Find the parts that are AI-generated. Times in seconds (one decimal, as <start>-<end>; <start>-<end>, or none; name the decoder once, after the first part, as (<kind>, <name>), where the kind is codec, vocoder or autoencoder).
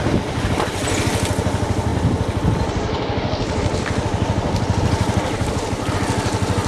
1.9-5.9 (vocoder, BigVGAN v2)